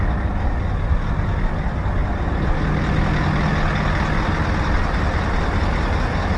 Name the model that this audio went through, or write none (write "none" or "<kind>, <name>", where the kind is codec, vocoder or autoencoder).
none